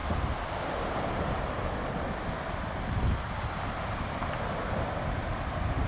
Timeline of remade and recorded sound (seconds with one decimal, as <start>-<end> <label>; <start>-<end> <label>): 0.0-2.6 recorded; 2.6-5.9 remade